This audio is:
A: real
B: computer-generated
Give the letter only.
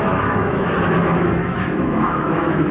B